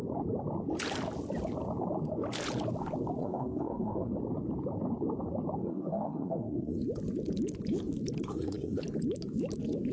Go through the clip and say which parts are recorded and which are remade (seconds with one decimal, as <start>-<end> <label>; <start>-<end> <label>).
0.0-3.2 recorded; 3.2-4.1 remade; 4.1-5.6 recorded; 5.6-6.8 remade; 6.8-8.3 recorded; 8.3-8.8 remade; 8.8-9.9 recorded

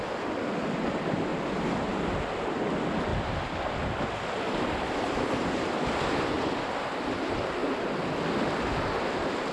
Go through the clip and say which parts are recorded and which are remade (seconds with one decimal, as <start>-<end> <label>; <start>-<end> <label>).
0.0-9.5 recorded

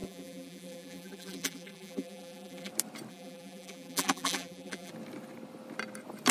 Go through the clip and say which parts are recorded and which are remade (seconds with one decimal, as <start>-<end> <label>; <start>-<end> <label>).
0.0-2.7 remade; 2.7-3.1 recorded; 3.1-4.9 remade; 4.9-6.3 recorded

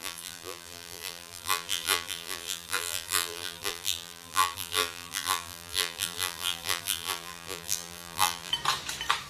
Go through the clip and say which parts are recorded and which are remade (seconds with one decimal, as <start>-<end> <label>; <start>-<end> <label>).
0.0-8.5 remade; 8.5-9.3 recorded

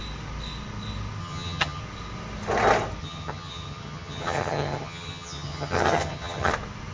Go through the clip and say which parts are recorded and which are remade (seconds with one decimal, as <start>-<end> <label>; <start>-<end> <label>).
0.0-1.2 recorded; 1.2-1.8 remade; 1.8-3.0 recorded; 3.0-6.5 remade; 6.5-6.9 recorded